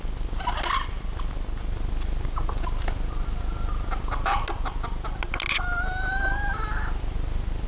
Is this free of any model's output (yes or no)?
yes